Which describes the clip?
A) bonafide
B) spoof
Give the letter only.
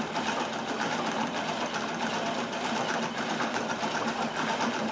A